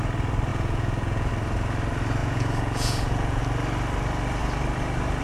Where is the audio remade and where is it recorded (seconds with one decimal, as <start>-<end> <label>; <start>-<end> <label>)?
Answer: 0.0-0.5 recorded; 0.5-1.3 remade; 1.3-2.2 recorded; 2.2-3.4 remade; 3.4-5.2 recorded